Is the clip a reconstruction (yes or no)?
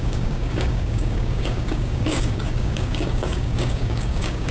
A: yes